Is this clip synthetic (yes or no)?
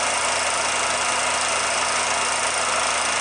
no